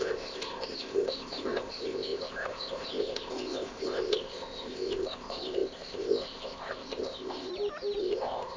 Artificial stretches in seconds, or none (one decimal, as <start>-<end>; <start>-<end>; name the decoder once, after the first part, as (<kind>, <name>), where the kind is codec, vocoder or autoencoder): 0.0-7.5 (codec, ZipCodec); 8.0-8.6